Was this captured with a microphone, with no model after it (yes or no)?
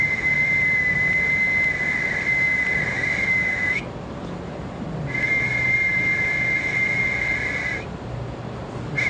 yes